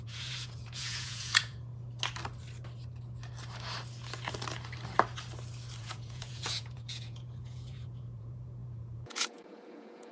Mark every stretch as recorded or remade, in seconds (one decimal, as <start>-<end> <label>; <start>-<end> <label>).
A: 0.0-1.7 remade; 1.7-5.8 recorded; 5.8-10.1 remade